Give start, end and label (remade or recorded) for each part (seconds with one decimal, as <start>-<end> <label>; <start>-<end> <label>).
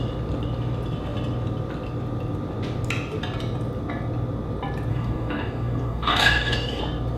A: 0.0-4.9 recorded; 4.9-6.8 remade; 6.8-7.2 recorded